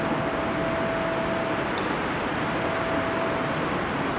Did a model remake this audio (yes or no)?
no